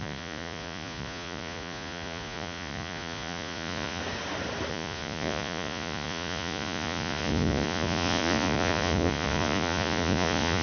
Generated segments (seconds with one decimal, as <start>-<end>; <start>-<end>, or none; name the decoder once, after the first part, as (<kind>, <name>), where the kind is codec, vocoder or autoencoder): 0.0-4.0 (vocoder, Vocos); 4.7-10.6

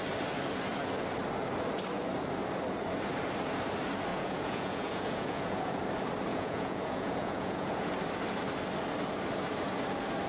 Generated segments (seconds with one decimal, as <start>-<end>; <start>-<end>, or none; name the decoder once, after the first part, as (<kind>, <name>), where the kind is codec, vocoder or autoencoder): 4.1-5.7 (vocoder, Vocos); 6.3-7.9

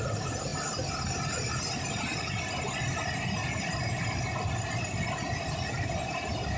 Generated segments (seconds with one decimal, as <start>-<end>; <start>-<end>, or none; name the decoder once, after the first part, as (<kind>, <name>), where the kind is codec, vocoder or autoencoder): none

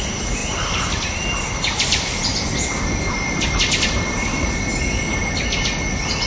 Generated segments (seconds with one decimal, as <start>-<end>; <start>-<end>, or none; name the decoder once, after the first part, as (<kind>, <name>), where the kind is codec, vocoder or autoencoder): 0.0-6.3 (vocoder, BigVGAN v2)

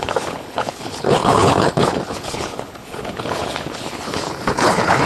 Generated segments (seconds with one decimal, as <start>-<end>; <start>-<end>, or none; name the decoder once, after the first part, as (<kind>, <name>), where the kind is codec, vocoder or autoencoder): 0.0-5.1 (codec, HILCodec)

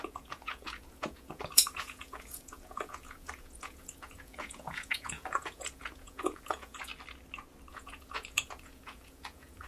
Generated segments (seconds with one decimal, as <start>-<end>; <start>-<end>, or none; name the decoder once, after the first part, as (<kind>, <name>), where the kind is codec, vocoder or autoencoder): 0.0-6.9 (vocoder, Vocos); 7.7-9.7

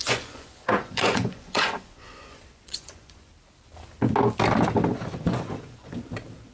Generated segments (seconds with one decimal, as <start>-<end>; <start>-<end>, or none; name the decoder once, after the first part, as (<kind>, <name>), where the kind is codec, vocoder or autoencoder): 0.0-3.3 (vocoder, Vocos); 4.9-5.9

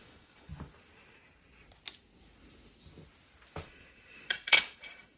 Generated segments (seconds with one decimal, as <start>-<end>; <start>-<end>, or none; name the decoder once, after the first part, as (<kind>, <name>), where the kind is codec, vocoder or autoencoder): 0.0-0.5 (vocoder, Vocos); 3.6-5.2